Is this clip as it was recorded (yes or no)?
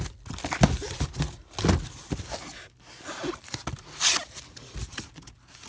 yes